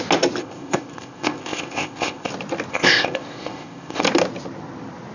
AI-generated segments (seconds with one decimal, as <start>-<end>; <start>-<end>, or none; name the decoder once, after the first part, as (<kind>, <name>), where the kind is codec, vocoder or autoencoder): 0.4-2.3 (codec, ZipCodec); 2.7-4.0